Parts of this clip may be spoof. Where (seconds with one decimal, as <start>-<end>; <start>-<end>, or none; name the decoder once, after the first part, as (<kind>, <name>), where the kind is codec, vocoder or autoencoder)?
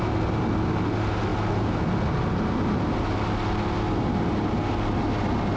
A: none